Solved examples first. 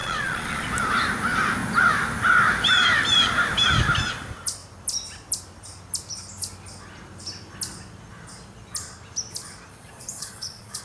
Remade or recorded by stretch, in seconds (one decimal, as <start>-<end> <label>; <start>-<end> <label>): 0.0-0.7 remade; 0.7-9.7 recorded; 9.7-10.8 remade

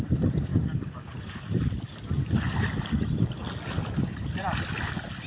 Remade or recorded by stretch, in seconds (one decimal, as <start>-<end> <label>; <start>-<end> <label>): 0.0-5.3 recorded

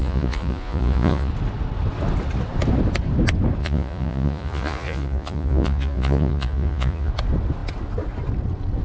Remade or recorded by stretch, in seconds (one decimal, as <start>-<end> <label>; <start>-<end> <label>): 0.0-1.3 remade; 1.3-3.6 recorded; 3.6-7.1 remade; 7.1-8.8 recorded

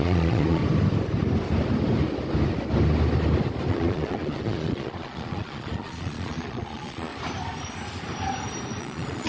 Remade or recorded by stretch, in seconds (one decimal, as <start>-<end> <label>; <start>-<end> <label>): 0.0-0.6 remade; 0.6-3.7 recorded; 3.7-7.1 remade; 7.1-8.8 recorded; 8.8-9.3 remade